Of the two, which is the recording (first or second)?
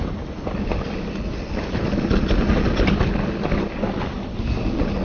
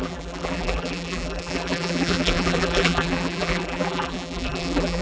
first